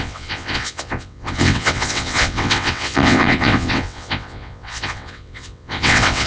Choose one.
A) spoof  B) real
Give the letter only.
A